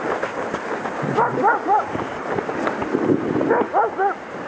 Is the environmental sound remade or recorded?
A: recorded